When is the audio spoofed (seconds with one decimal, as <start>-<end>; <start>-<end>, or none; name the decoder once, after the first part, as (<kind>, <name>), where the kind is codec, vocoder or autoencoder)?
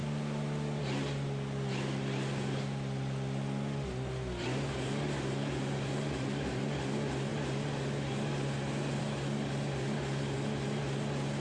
none